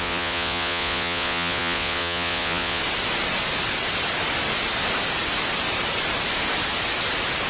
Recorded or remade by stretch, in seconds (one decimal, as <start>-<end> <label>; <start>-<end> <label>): 0.0-2.8 remade; 2.8-7.5 recorded

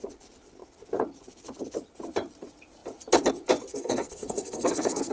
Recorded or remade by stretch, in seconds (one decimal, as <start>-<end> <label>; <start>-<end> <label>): 0.0-3.7 recorded; 3.7-5.1 remade

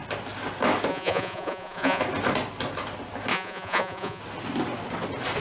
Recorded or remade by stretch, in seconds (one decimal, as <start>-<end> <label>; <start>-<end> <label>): 0.0-0.9 recorded; 0.9-2.0 remade; 2.0-3.3 recorded; 3.3-4.2 remade; 4.2-5.4 recorded

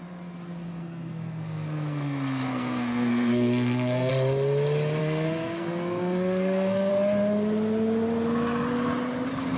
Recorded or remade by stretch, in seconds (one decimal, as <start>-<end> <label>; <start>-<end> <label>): 0.0-0.5 recorded; 0.5-4.1 remade; 4.1-5.0 recorded; 5.0-6.9 remade; 6.9-9.6 recorded

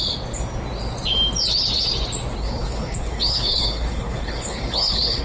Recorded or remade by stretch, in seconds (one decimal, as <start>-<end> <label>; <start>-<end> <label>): 0.0-2.4 recorded; 2.4-5.2 remade

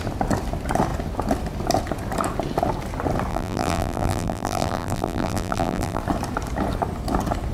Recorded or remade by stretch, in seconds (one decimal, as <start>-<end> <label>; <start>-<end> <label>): 0.0-3.3 recorded; 3.3-6.0 remade; 6.0-7.5 recorded

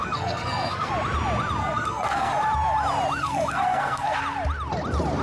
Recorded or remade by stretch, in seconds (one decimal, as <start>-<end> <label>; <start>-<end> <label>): 0.0-0.9 remade; 0.9-1.6 recorded; 1.6-2.3 remade; 2.3-3.2 recorded; 3.2-4.2 remade; 4.2-5.2 recorded

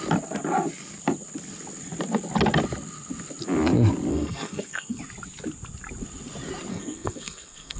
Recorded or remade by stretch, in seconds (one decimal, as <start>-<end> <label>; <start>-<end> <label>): 0.0-4.1 recorded; 4.1-5.0 remade; 5.0-6.7 recorded; 6.7-7.8 remade